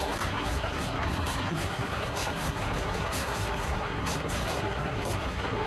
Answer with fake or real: fake